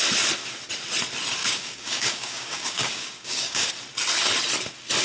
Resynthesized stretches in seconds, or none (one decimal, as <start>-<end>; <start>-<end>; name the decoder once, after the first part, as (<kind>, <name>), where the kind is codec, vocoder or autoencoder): 1.4-3.7 (codec, DAC)